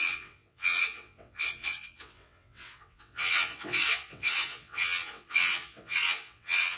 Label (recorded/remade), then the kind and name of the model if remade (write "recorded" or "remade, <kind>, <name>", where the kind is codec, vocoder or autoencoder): remade, vocoder, WaveNeXt